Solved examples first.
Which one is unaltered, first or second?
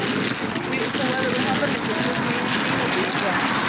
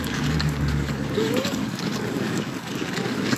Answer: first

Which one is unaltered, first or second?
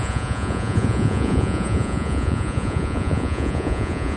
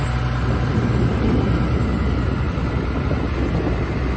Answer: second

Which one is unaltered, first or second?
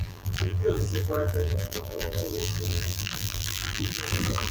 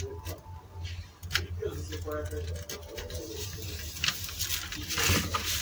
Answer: second